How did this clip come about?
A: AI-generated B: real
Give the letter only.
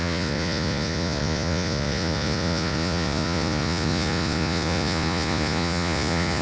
A